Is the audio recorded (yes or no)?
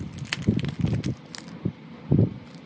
yes